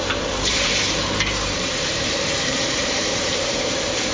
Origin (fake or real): fake